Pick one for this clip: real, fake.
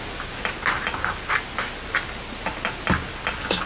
real